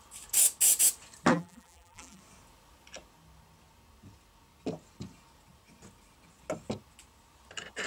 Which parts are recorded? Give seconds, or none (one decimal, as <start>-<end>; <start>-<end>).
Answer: 0.0-1.3; 2.2-7.9